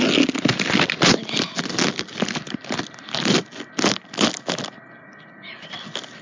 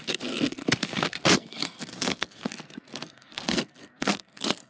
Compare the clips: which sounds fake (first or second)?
second